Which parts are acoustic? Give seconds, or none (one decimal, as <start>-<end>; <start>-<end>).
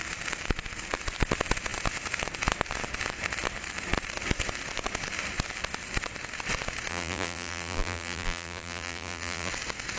0.0-6.9; 9.5-10.0